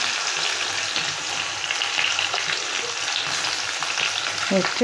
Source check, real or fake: real